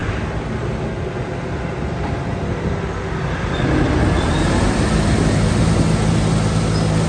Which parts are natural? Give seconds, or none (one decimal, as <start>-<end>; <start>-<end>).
0.0-7.1